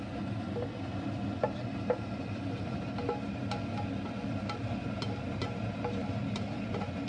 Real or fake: real